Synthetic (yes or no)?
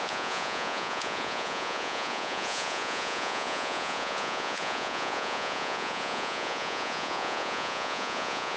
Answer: yes